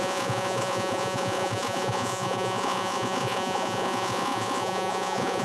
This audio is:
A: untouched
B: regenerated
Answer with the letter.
B